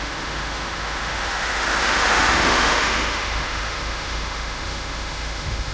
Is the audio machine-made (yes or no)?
yes